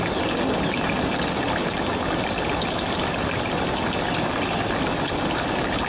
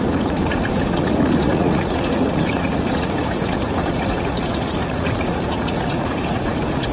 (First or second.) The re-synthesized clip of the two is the second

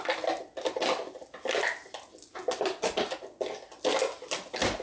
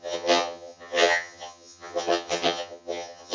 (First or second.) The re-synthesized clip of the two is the second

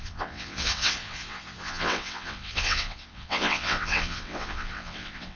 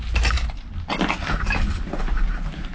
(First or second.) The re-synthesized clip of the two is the first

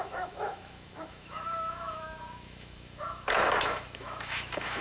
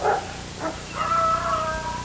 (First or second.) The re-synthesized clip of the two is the first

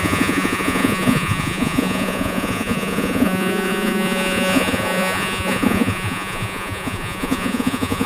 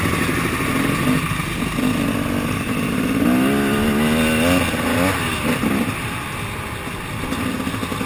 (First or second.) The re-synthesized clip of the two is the first